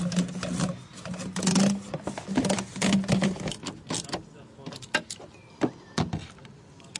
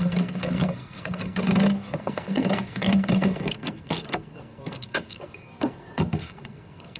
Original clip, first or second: first